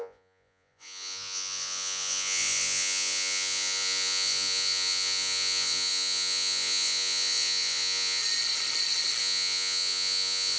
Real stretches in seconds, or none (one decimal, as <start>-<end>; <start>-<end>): 8.2-9.2